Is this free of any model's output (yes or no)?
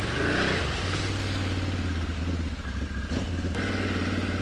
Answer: yes